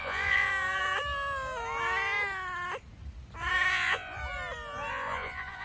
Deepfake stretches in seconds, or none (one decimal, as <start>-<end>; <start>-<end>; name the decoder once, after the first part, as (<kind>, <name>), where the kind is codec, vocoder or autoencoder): 0.0-0.5 (vocoder, Vocos); 3.7-4.2; 4.9-5.6